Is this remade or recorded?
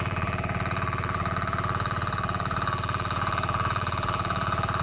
remade